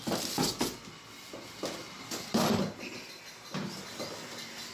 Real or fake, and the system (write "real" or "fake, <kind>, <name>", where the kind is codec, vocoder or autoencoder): real